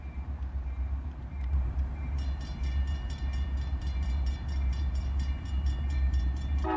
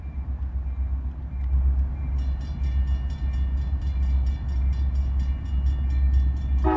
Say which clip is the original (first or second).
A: second